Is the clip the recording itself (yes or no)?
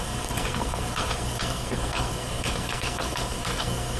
no